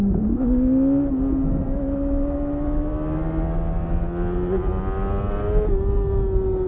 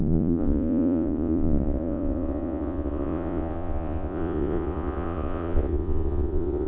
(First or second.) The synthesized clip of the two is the second